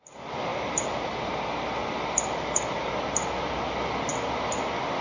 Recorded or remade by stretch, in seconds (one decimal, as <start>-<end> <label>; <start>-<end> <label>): 0.0-5.0 recorded